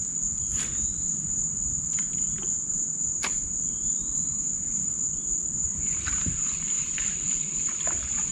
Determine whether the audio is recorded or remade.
remade